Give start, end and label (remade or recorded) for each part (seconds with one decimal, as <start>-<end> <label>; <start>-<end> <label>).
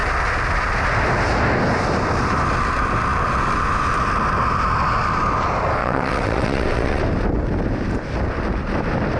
0.0-5.8 recorded; 5.8-7.0 remade; 7.0-9.2 recorded